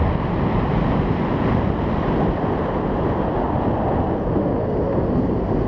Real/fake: real